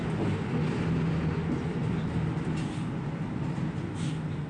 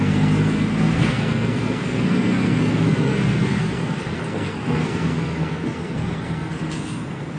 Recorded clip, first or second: first